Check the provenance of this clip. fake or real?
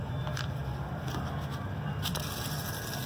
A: real